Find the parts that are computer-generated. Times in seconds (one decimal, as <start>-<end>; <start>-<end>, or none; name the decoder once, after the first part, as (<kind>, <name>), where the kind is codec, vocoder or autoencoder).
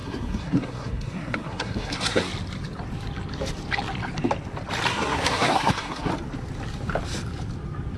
0.0-2.3 (codec, SNAC); 4.9-6.1